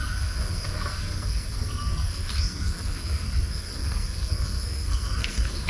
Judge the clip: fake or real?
fake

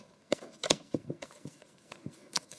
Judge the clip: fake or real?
fake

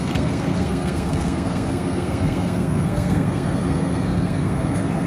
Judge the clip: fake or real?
fake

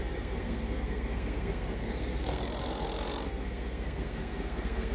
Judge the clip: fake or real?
fake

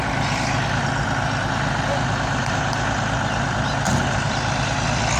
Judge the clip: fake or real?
real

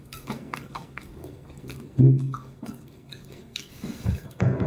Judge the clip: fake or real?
fake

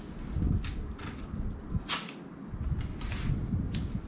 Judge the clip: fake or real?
real